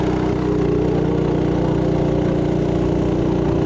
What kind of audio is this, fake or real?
real